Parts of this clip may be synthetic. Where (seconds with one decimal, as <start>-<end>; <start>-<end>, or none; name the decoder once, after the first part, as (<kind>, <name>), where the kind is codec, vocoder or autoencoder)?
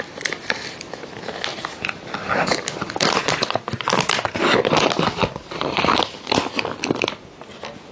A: none